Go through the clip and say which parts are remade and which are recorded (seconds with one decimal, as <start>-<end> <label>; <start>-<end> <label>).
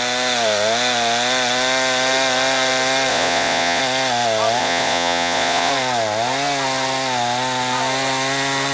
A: 0.0-3.1 recorded; 3.1-3.8 remade; 3.8-4.6 recorded; 4.6-5.7 remade; 5.7-8.7 recorded